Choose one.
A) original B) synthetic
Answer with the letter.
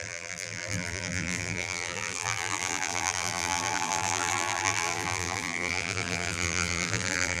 B